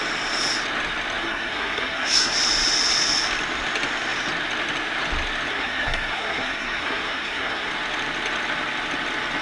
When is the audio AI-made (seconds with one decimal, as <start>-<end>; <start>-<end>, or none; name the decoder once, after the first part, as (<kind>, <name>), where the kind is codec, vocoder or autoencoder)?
1.2-2.3 (codec, SNAC); 5.5-7.7